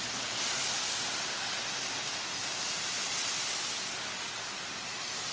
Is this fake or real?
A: real